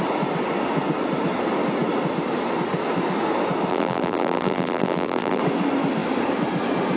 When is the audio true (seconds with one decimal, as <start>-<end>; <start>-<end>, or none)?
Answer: 0.0-3.7; 5.4-7.0